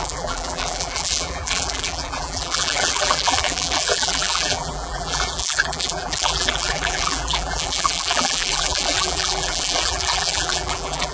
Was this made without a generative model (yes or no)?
no